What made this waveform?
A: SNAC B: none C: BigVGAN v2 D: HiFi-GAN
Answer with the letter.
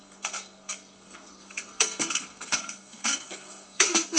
A